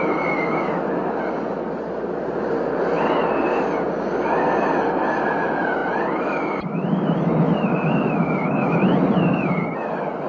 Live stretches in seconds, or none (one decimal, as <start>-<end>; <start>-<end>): 0.0-10.3